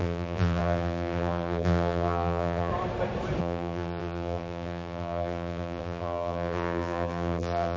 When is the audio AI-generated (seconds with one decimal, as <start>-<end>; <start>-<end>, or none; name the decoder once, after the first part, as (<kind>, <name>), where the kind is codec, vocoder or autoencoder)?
0.0-2.7 (vocoder, BigVGAN v2); 3.4-7.8